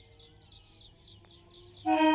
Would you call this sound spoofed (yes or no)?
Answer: no